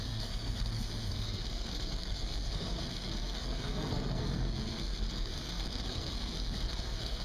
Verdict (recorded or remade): remade